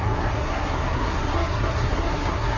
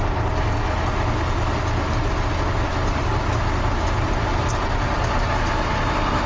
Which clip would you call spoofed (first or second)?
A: first